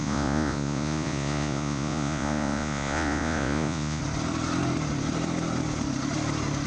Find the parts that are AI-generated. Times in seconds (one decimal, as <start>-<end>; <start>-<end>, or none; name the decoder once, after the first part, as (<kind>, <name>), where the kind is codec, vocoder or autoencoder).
0.0-4.0 (vocoder, Vocos)